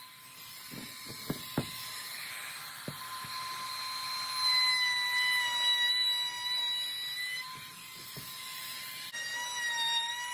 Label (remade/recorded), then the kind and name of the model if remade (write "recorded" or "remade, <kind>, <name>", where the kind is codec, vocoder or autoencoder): recorded